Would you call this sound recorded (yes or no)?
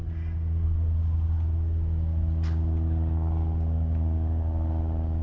yes